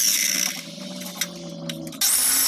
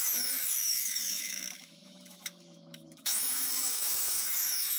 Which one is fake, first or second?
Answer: second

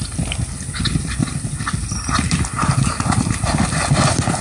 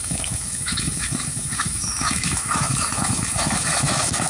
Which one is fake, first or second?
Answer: second